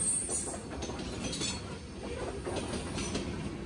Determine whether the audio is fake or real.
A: real